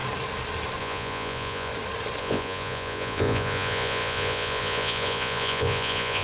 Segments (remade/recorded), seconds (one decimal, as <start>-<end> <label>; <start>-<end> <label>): 0.0-0.8 recorded; 0.8-1.7 remade; 1.7-2.2 recorded; 2.2-6.2 remade